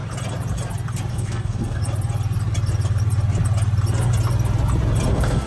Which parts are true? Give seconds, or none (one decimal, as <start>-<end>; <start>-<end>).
0.0-1.1; 1.8-5.1